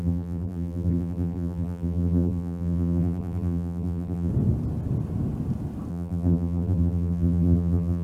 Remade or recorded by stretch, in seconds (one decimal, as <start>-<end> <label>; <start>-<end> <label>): 0.0-4.3 remade; 4.3-5.9 recorded; 5.9-8.0 remade